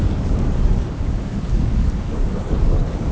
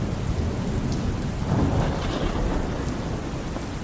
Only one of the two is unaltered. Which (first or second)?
second